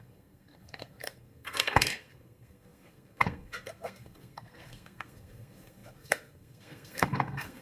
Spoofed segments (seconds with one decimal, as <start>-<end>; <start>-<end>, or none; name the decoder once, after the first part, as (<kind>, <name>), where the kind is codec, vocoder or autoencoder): 0.0-7.6 (codec, SNAC)